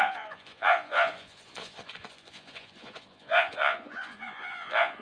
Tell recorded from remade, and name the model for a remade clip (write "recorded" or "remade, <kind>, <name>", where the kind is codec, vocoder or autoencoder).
remade, vocoder, Vocos